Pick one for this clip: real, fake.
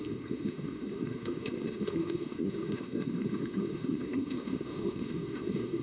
fake